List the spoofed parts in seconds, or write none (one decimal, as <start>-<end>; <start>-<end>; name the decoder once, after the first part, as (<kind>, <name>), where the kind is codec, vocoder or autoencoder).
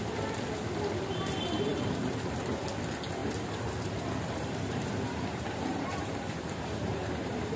3.2-7.6 (vocoder, BigVGAN v2)